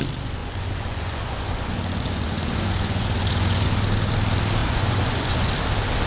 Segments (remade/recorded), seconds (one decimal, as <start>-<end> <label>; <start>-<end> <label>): 0.0-0.4 recorded; 0.4-3.7 remade; 3.7-4.6 recorded; 4.6-5.5 remade; 5.5-6.1 recorded